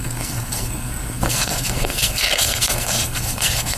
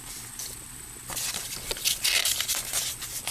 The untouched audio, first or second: second